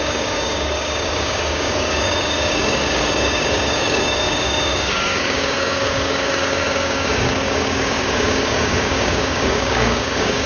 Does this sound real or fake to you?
fake